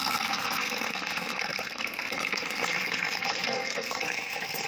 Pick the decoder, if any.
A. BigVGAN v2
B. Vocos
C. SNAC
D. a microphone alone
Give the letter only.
C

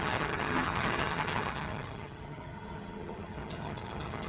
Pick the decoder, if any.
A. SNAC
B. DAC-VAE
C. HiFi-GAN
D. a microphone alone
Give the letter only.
C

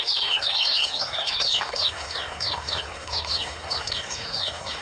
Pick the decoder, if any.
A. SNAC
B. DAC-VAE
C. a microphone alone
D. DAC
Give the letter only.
A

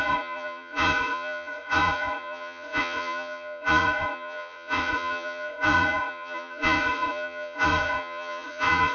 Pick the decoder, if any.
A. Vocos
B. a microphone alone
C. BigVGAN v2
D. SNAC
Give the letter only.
A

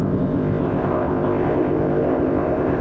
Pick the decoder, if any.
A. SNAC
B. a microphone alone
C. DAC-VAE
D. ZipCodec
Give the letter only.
D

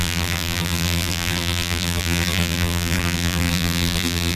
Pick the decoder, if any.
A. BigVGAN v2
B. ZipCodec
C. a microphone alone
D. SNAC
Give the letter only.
A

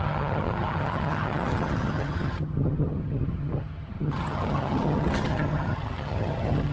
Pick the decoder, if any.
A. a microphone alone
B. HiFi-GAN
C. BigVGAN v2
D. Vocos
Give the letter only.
B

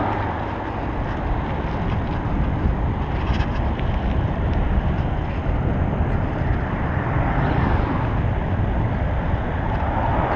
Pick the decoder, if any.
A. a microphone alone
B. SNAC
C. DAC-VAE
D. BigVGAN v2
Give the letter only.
A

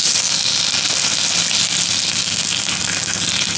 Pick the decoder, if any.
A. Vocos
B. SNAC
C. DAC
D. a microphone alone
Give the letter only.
D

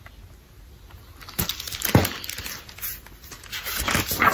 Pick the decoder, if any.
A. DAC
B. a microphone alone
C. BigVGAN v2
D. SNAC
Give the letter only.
B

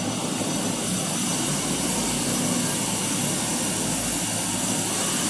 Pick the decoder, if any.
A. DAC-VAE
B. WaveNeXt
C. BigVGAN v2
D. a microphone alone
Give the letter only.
D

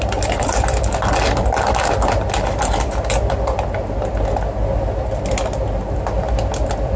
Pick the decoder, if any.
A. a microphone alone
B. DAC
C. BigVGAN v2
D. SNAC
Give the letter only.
A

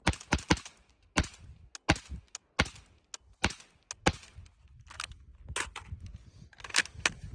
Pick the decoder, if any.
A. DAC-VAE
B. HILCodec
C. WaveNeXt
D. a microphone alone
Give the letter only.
D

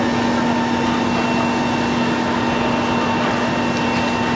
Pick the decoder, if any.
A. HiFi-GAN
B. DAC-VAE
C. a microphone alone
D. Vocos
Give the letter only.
C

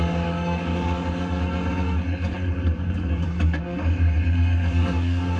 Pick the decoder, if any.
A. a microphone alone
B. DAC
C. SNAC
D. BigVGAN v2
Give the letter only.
B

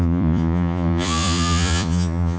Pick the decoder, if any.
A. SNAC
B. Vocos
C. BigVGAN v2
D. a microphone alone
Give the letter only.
B